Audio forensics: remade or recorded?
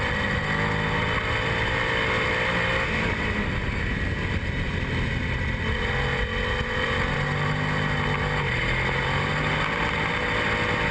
recorded